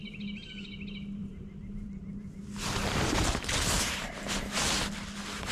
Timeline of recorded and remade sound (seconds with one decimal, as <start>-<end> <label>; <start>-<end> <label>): 0.0-0.5 remade; 0.5-1.2 recorded; 1.2-4.5 remade; 4.5-5.5 recorded